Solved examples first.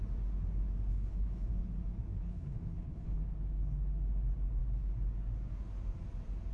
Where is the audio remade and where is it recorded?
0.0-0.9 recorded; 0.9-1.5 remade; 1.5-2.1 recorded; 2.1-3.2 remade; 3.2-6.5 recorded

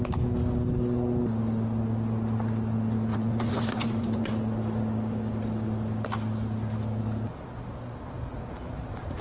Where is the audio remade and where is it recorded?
0.0-3.1 recorded; 3.1-4.3 remade; 4.3-9.2 recorded

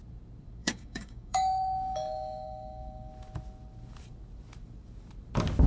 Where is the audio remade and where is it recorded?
0.0-0.6 recorded; 0.6-3.1 remade; 3.1-5.7 recorded

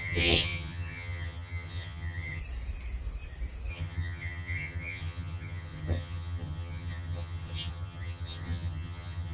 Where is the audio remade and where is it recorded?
0.0-2.4 remade; 2.4-3.7 recorded; 3.7-9.3 remade